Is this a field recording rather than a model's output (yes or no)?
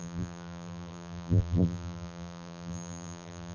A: no